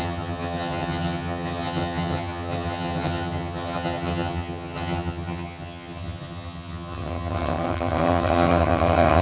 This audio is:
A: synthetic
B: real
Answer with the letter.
A